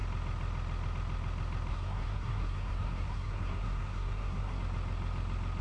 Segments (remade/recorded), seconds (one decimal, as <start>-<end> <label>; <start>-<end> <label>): 0.0-1.7 recorded; 1.7-4.6 remade; 4.6-5.6 recorded

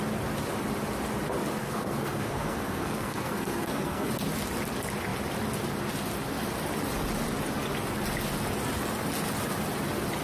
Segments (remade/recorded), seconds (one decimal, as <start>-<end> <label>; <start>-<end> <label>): 0.0-1.6 recorded; 1.6-4.1 remade; 4.1-10.2 recorded

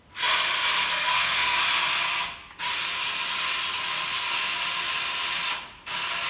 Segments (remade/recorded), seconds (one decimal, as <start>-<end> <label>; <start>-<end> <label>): 0.0-1.1 recorded; 1.1-1.6 remade; 1.6-6.3 recorded